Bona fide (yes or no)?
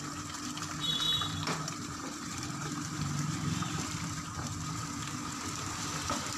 no